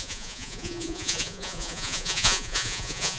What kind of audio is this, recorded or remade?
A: remade